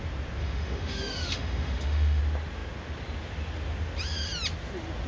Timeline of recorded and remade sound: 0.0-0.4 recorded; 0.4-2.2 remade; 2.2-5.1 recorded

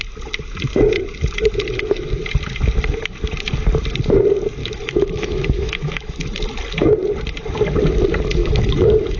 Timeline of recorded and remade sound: 0.0-4.6 recorded; 4.6-6.6 remade; 6.6-8.4 recorded; 8.4-9.2 remade

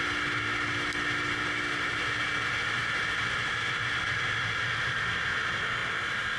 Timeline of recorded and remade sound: 0.0-6.4 recorded

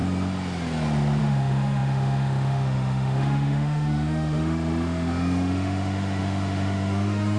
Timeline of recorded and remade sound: 0.0-1.2 recorded; 1.2-7.4 remade

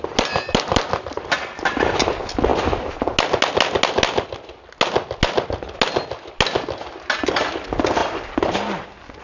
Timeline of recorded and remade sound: 0.0-9.2 recorded